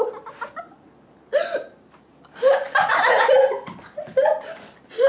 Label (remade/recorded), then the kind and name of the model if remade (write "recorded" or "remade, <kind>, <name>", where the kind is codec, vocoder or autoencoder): recorded